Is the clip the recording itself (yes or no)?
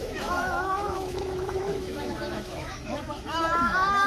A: no